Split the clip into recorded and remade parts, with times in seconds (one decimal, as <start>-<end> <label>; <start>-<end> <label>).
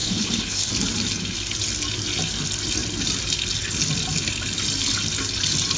0.0-0.7 remade; 0.7-5.8 recorded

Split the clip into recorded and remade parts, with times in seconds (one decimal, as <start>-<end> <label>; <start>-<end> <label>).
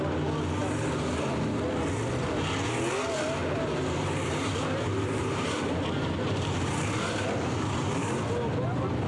0.0-3.4 recorded; 3.4-8.3 remade; 8.3-9.1 recorded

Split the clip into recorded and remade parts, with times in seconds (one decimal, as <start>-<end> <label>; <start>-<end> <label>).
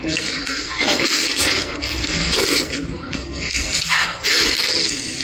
0.0-5.2 remade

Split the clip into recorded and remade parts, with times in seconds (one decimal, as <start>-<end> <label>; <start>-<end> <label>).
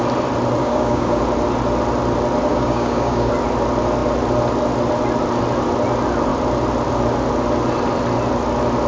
0.0-0.6 recorded; 0.6-1.2 remade; 1.2-2.5 recorded; 2.5-3.3 remade; 3.3-8.9 recorded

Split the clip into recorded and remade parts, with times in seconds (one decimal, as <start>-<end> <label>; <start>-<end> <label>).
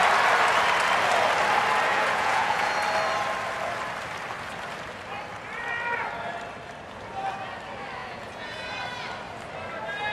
0.0-1.9 recorded; 1.9-2.7 remade; 2.7-8.0 recorded; 8.0-8.7 remade; 8.7-10.1 recorded